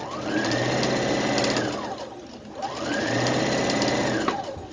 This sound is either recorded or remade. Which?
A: recorded